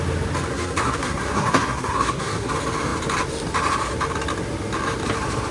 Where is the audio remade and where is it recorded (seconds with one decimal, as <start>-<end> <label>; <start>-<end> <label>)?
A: 0.0-0.5 recorded; 0.5-2.5 remade; 2.5-5.5 recorded